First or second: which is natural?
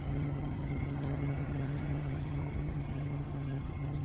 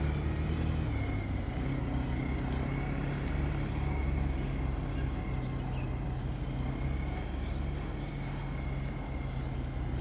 second